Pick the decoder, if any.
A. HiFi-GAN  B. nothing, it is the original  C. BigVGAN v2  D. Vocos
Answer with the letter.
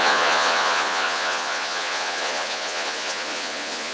D